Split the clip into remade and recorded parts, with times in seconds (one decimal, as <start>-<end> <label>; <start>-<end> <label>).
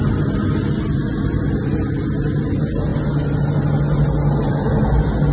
0.0-5.3 recorded